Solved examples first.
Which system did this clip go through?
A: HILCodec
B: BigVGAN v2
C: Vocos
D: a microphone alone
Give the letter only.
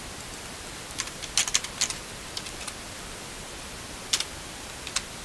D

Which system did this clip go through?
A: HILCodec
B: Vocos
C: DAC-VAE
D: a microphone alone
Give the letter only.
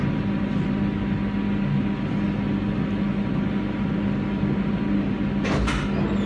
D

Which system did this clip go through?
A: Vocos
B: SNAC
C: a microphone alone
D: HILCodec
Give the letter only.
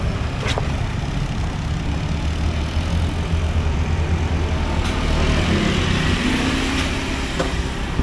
C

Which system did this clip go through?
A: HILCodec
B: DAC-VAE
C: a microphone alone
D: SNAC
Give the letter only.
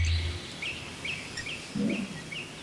C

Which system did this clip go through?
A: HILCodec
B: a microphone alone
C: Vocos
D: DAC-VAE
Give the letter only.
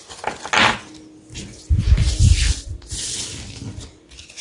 B